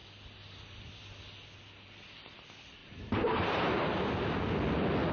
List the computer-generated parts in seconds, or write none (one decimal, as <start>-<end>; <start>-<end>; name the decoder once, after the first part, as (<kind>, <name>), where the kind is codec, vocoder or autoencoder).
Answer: 2.8-3.8 (vocoder, BigVGAN v2)